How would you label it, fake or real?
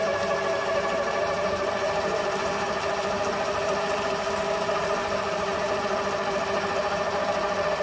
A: fake